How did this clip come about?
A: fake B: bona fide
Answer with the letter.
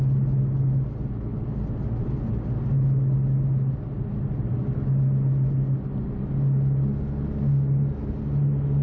B